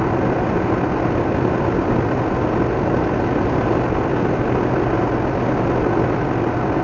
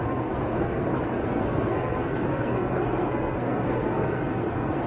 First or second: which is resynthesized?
second